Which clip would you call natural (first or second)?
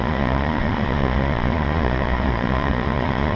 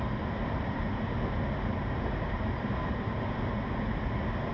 second